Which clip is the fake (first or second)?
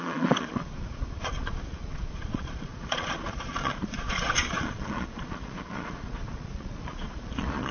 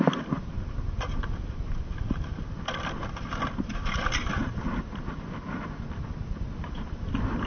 first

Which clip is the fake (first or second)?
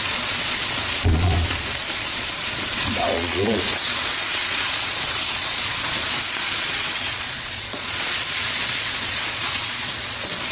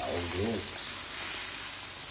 first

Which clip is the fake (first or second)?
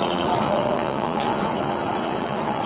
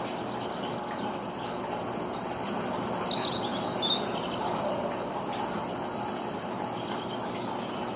first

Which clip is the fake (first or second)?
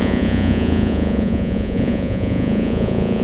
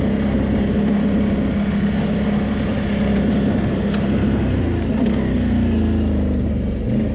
first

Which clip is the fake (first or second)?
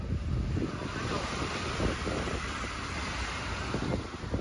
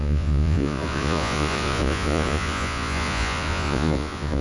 second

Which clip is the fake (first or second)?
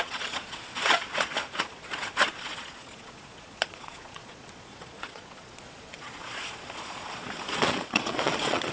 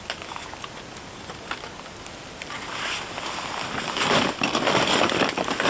first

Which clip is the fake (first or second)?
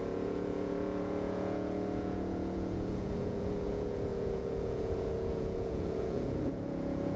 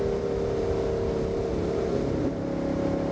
first